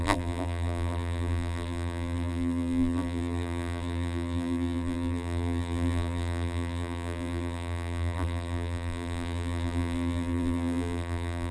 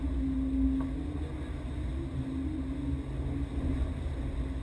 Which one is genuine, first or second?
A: second